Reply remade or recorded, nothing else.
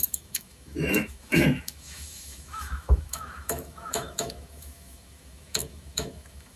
remade